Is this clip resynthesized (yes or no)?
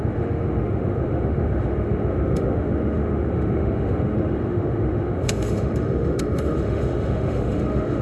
yes